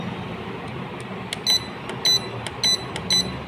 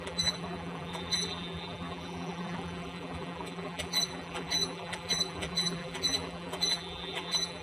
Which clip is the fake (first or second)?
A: second